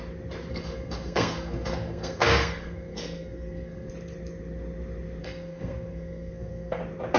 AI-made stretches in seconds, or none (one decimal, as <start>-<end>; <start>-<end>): 0.5-3.9; 5.2-6.8